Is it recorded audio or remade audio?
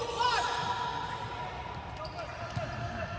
recorded